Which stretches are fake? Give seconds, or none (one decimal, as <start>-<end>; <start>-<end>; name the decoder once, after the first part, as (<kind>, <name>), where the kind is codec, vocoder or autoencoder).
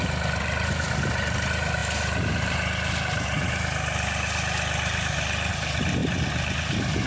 none